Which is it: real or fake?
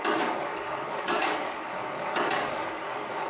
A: fake